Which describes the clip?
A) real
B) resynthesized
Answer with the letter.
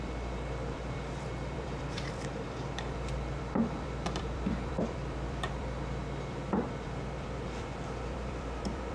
B